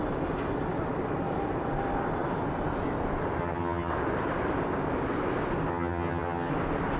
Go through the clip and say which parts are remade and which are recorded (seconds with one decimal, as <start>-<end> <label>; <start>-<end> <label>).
0.0-3.4 recorded; 3.4-3.9 remade; 3.9-5.7 recorded; 5.7-6.5 remade; 6.5-7.0 recorded

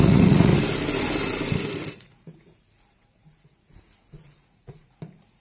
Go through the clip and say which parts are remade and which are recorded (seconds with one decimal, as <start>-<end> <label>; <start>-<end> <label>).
0.0-0.5 remade; 0.5-1.9 recorded; 1.9-5.4 remade

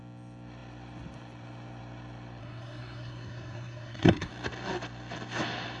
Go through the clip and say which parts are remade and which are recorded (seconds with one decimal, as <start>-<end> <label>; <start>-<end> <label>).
0.0-2.4 recorded; 2.4-4.3 remade; 4.3-5.8 recorded

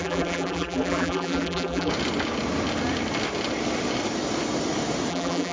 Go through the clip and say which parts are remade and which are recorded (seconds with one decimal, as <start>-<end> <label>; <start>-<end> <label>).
0.0-1.9 remade; 1.9-5.1 recorded; 5.1-5.5 remade

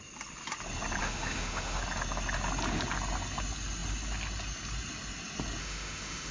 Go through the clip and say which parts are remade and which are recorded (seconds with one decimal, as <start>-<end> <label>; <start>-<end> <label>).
0.0-1.0 recorded; 1.0-1.8 remade; 1.8-5.6 recorded; 5.6-6.3 remade

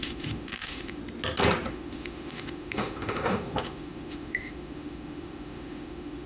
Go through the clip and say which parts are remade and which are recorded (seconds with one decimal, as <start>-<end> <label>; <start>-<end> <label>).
0.0-1.0 remade; 1.0-1.7 recorded; 1.7-6.3 remade

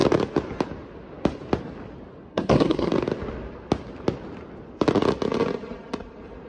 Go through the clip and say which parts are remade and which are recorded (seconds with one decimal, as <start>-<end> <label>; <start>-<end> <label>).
0.0-2.3 recorded; 2.3-2.9 remade; 2.9-6.5 recorded

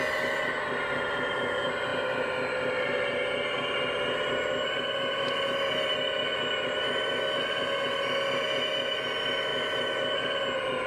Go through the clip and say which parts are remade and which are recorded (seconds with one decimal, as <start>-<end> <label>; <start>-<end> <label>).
0.0-10.9 recorded